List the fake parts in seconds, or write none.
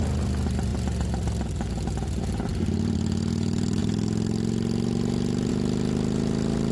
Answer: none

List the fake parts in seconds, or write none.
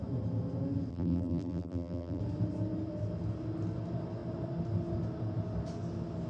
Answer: 0.9-2.2 (vocoder, BigVGAN v2)